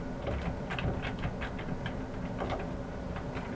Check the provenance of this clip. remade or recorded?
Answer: recorded